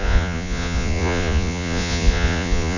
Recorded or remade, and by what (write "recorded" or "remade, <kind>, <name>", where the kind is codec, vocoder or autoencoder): remade, vocoder, Vocos